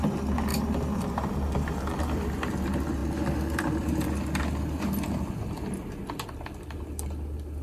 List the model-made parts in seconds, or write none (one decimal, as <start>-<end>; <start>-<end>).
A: 0.5-2.5